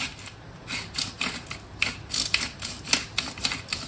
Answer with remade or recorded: recorded